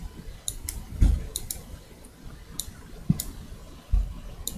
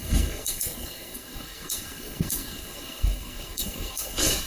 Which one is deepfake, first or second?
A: second